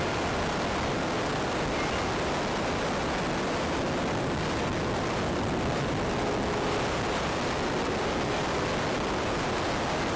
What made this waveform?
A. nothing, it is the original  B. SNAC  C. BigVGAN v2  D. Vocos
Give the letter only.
A